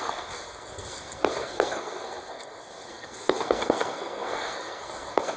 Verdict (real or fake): fake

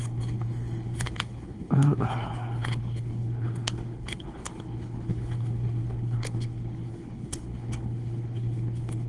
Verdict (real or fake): fake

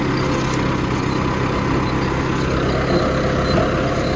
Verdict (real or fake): real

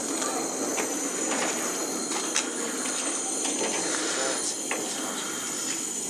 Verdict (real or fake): real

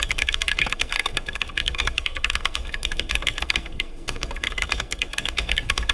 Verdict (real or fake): fake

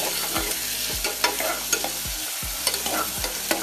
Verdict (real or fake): real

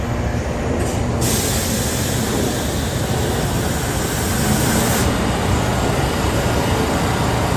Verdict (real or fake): real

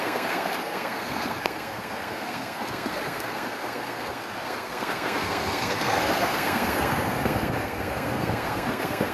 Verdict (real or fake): fake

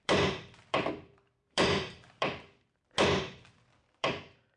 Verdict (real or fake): fake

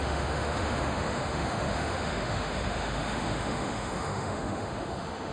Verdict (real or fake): fake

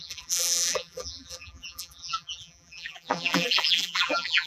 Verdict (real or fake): fake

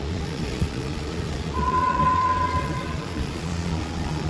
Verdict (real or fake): fake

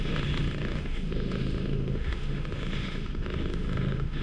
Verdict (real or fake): fake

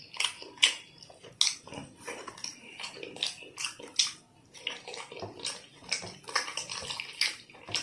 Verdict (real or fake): real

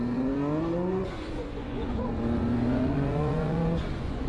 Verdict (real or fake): fake